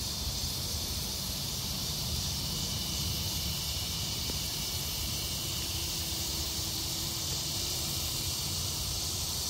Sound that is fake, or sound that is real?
fake